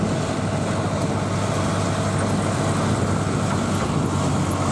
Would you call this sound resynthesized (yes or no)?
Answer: no